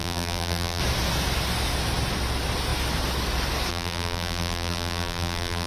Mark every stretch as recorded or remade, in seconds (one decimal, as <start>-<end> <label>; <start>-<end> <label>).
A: 0.0-0.8 remade; 0.8-3.7 recorded; 3.7-5.7 remade